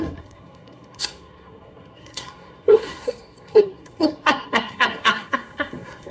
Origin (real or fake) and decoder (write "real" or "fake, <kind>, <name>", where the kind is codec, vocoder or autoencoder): fake, codec, SNAC